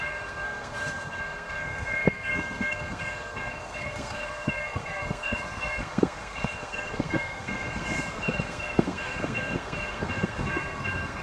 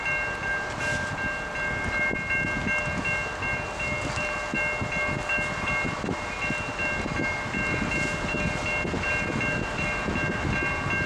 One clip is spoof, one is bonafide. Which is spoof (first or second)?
first